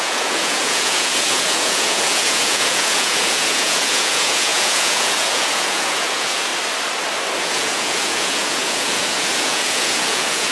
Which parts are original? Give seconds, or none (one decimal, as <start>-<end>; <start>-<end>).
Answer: 6.5-7.4